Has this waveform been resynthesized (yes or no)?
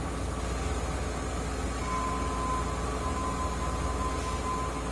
no